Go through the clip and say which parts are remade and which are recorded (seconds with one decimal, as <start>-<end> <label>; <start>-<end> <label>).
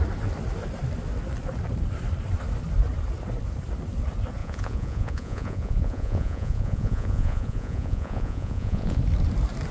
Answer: 0.0-4.4 recorded; 4.4-9.0 remade; 9.0-9.7 recorded